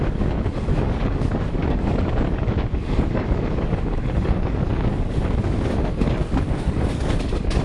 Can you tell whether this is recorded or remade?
remade